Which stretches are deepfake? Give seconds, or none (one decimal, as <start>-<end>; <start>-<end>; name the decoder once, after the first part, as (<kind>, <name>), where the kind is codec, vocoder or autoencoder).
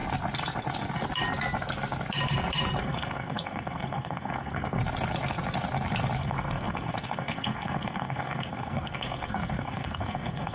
2.8-4.8 (codec, SNAC); 6.2-10.5